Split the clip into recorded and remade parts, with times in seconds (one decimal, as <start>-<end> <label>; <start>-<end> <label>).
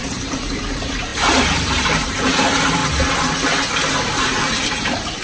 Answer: 0.0-2.8 remade; 2.8-3.9 recorded; 3.9-5.2 remade